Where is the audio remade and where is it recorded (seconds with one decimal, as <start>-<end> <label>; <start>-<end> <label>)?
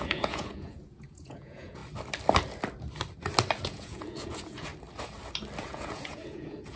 0.0-1.8 remade; 1.8-3.6 recorded; 3.6-4.7 remade; 4.7-5.6 recorded; 5.6-6.8 remade